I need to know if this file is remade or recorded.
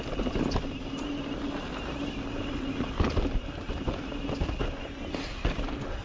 recorded